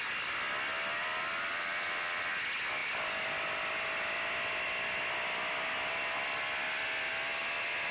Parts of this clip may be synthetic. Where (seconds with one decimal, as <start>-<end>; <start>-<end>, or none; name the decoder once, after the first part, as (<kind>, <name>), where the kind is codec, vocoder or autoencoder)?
none